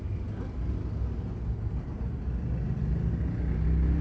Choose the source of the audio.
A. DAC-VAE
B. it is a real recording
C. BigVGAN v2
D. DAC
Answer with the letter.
B